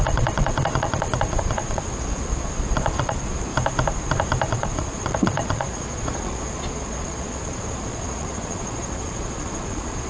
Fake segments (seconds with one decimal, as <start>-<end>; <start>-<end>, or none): 0.0-3.5; 4.5-10.1